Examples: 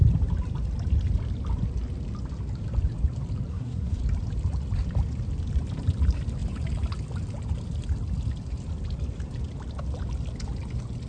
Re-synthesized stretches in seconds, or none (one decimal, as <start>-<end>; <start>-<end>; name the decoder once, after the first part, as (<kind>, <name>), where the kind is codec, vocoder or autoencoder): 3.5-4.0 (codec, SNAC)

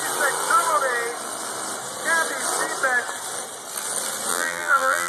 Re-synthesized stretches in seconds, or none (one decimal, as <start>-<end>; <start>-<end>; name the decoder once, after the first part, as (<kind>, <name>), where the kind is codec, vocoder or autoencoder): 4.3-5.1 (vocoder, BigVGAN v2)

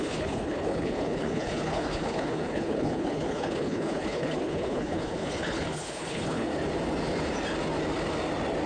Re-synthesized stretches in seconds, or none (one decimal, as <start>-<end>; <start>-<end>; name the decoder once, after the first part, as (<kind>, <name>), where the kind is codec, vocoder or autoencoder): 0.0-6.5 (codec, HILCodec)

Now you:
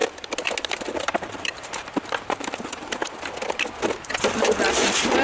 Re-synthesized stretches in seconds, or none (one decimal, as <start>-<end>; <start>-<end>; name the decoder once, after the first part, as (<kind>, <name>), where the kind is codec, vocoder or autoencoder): 0.9-3.0 (vocoder, BigVGAN v2); 4.7-5.2

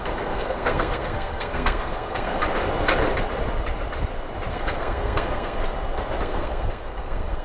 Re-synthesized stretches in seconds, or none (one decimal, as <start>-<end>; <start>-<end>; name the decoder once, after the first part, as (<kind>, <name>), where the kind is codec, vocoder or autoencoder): 0.0-2.4 (codec, SNAC); 4.5-5.6; 6.2-7.4